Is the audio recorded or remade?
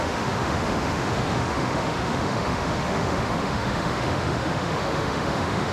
remade